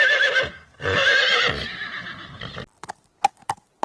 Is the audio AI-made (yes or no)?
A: yes